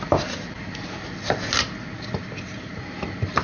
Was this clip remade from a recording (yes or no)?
no